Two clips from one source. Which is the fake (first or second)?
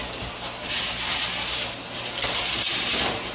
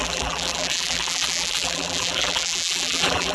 second